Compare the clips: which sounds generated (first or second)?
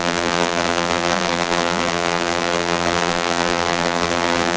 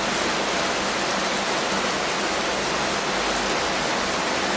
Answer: first